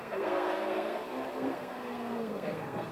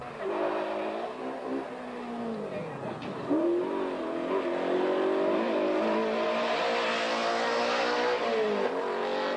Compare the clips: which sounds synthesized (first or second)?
first